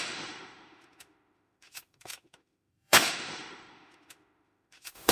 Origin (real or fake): fake